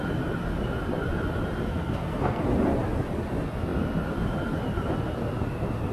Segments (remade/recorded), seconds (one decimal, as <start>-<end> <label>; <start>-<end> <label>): 0.0-1.7 recorded; 1.7-2.4 remade; 2.4-5.9 recorded